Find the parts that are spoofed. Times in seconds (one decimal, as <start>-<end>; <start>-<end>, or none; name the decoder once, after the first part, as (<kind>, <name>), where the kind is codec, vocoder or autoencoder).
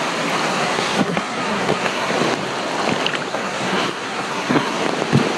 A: 0.5-2.1 (codec, SNAC); 3.3-4.8